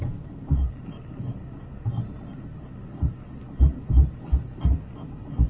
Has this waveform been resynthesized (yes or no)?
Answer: no